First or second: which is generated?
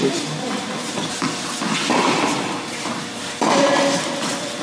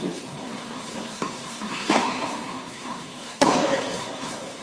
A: second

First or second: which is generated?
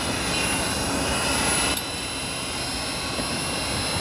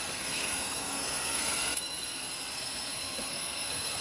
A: second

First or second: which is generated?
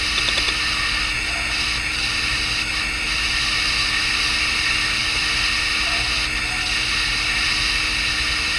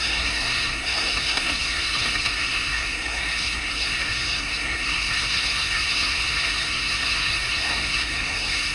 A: second